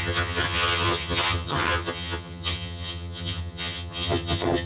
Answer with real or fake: fake